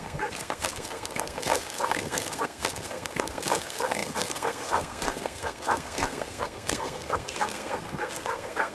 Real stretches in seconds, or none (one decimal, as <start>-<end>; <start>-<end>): none

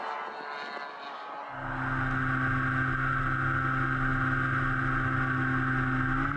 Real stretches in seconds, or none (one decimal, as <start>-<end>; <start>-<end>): 0.0-6.4

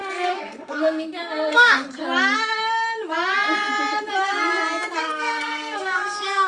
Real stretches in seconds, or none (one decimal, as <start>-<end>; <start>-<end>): 2.0-4.9

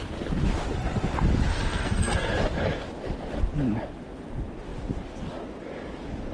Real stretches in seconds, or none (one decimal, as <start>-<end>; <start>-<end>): 0.0-1.5; 2.3-6.3

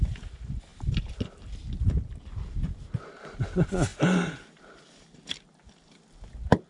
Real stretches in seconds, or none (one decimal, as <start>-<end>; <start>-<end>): 0.0-6.7

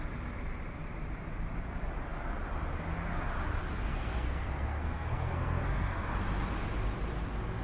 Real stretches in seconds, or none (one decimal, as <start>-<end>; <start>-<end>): 0.0-3.9; 6.1-7.6

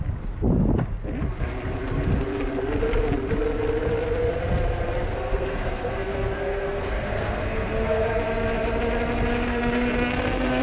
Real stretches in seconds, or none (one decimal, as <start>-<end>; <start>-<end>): 0.0-5.1; 8.2-9.5

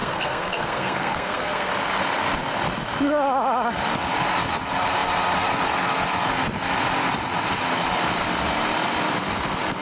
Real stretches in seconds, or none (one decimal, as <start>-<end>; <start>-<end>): 1.7-9.8